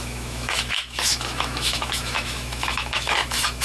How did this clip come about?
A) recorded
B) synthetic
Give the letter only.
B